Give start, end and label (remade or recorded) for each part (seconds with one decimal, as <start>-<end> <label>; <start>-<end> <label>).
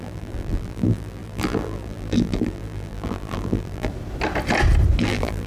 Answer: 0.0-3.9 remade; 3.9-5.0 recorded; 5.0-5.5 remade